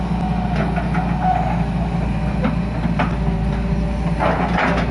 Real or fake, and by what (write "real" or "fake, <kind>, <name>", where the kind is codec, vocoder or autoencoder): real